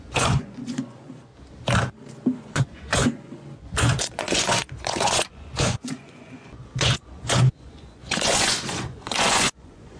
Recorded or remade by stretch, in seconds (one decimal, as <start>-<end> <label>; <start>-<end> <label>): 0.0-1.3 remade; 1.3-2.1 recorded; 2.1-10.0 remade